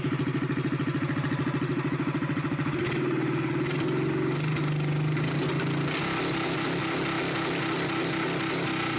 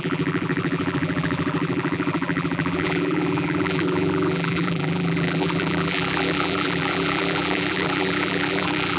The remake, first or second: second